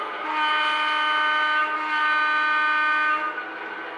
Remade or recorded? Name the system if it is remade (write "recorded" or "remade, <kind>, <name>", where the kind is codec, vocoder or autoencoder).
recorded